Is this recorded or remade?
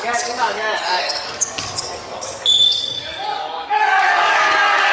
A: remade